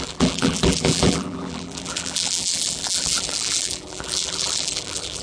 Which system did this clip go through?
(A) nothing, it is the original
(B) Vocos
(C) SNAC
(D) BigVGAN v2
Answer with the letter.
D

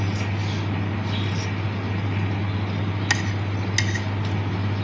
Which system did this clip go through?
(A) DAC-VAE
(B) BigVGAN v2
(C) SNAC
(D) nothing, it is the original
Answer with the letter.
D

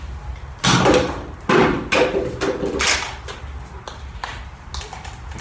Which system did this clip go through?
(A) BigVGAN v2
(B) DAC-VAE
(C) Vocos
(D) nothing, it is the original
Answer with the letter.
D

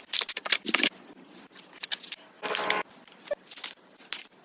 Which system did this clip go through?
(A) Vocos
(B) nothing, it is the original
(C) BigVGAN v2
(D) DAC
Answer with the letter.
B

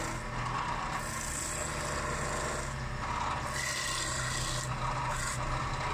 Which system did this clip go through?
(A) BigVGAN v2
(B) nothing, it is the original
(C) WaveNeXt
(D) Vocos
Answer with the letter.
B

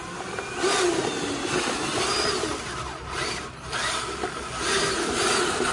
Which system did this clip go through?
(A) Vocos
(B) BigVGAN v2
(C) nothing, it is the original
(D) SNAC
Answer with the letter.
B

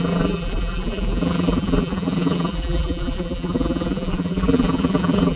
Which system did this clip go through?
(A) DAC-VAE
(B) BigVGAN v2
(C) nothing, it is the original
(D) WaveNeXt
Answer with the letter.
B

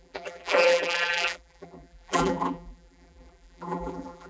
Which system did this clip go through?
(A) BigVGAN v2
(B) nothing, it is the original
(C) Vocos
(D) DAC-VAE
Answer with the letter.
A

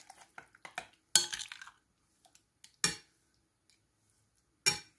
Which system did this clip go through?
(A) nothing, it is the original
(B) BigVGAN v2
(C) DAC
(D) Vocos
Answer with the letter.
A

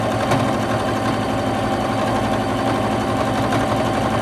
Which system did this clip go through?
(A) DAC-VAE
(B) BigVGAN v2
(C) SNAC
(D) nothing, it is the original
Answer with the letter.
D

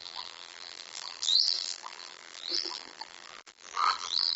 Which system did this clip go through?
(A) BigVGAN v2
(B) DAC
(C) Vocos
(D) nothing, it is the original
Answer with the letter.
A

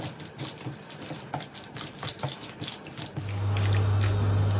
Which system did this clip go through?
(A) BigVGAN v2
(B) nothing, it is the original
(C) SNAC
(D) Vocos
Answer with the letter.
B